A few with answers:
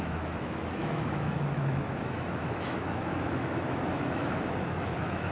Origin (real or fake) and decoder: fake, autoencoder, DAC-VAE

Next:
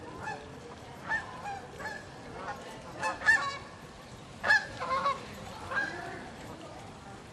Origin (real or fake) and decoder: fake, vocoder, BigVGAN v2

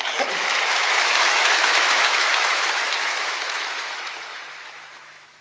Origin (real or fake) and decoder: fake, autoencoder, DAC-VAE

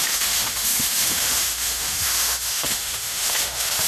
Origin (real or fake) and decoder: fake, autoencoder, DAC-VAE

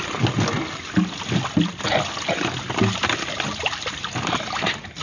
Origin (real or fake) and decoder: real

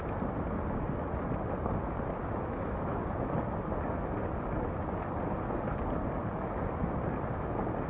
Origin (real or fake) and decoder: real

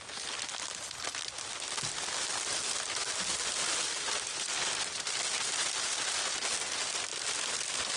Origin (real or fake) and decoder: real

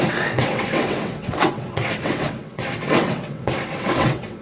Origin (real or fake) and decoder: fake, vocoder, WaveNeXt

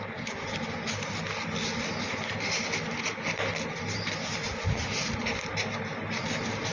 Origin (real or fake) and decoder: real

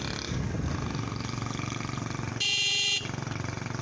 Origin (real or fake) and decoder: real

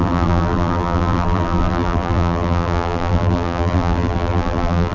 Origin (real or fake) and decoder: fake, vocoder, BigVGAN v2